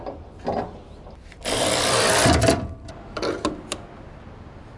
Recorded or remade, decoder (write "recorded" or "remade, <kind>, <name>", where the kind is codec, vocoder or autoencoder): remade, vocoder, BigVGAN v2